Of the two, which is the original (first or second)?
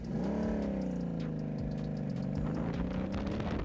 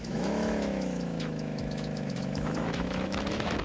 first